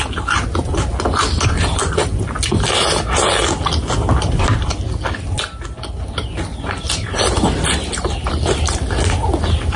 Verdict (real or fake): real